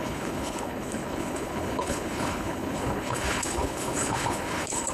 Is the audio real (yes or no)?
no